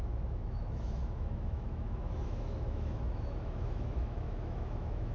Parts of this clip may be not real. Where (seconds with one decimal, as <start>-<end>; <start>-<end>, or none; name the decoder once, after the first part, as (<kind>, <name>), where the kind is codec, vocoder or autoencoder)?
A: 0.0-5.1 (autoencoder, DAC-VAE)